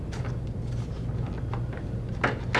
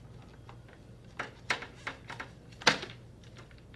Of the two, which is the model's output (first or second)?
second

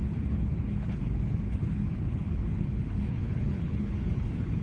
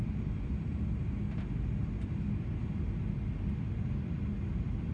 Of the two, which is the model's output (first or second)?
first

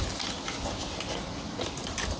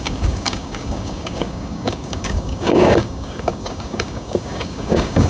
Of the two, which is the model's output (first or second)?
second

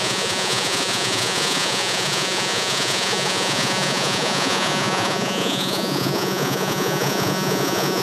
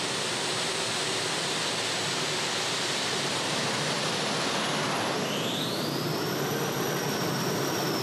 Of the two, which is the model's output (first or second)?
first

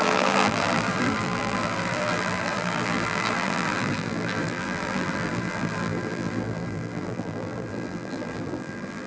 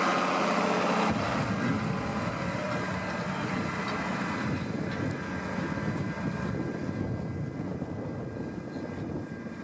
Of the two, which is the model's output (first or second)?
first